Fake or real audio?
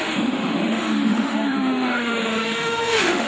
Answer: fake